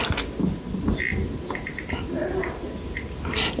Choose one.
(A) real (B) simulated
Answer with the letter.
A